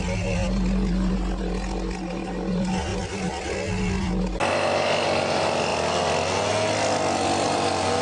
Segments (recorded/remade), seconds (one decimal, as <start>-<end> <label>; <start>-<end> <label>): 0.0-8.0 recorded